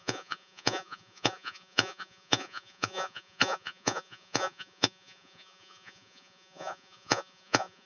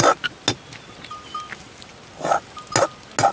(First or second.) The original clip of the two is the second